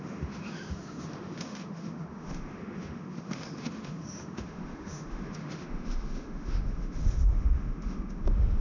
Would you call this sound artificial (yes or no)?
yes